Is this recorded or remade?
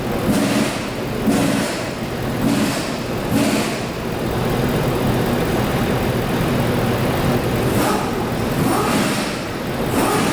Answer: recorded